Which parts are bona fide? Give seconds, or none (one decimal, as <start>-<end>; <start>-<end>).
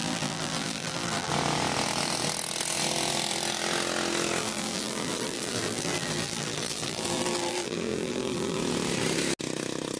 1.3-4.4; 8.6-10.0